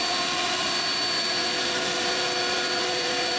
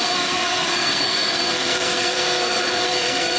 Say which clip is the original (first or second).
first